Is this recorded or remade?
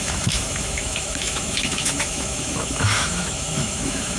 remade